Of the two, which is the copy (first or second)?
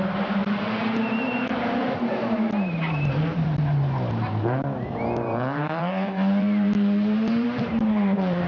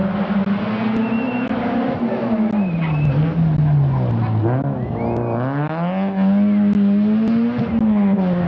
first